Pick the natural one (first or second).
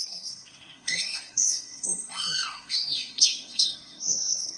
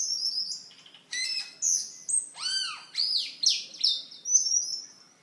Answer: second